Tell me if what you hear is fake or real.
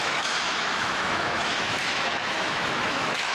fake